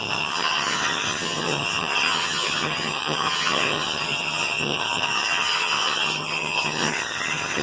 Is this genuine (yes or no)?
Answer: no